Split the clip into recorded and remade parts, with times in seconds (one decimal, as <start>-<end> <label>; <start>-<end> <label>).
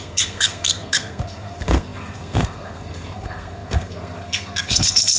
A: 0.0-5.2 remade